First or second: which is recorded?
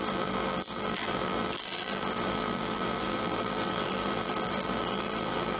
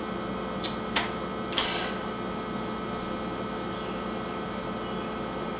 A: second